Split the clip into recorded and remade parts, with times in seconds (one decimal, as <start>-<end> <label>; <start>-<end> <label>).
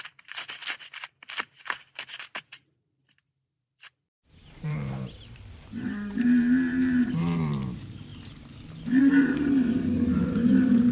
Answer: 0.0-0.6 remade; 0.6-1.1 recorded; 1.1-8.1 remade; 8.1-9.0 recorded; 9.0-10.9 remade